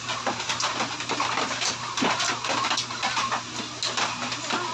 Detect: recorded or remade recorded